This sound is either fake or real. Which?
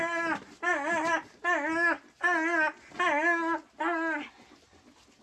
real